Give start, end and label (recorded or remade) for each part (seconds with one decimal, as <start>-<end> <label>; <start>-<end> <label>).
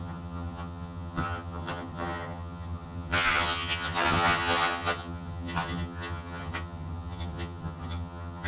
0.0-8.5 remade